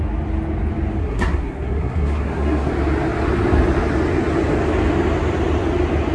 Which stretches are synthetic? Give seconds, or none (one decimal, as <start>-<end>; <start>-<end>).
1.0-2.7